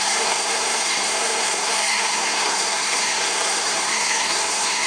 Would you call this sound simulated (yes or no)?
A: yes